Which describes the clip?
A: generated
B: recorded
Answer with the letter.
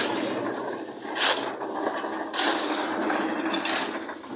B